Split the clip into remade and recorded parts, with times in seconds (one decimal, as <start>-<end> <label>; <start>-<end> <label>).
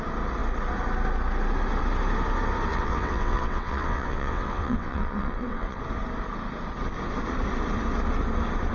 0.0-2.7 recorded; 2.7-5.8 remade; 5.8-8.7 recorded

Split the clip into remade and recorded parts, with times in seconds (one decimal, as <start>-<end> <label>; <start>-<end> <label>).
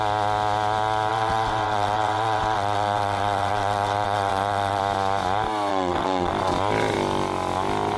0.0-1.1 recorded; 1.1-4.8 remade; 4.8-5.7 recorded; 5.7-6.3 remade; 6.3-8.0 recorded